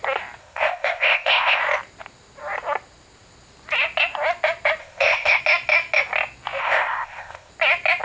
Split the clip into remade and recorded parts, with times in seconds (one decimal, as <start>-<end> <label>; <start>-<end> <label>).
0.0-0.4 recorded; 0.4-1.6 remade; 1.6-4.8 recorded; 4.8-5.4 remade; 5.4-6.6 recorded; 6.6-7.5 remade; 7.5-8.0 recorded